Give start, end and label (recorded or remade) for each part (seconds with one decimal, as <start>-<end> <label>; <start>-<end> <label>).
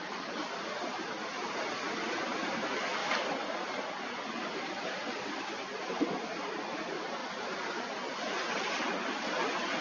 0.0-3.0 recorded; 3.0-6.5 remade; 6.5-7.2 recorded; 7.2-8.6 remade; 8.6-9.8 recorded